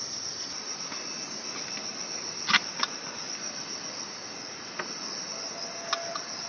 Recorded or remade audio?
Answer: recorded